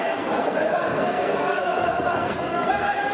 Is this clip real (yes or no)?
no